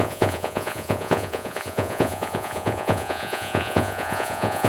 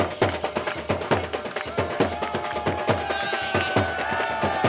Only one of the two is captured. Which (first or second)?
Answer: second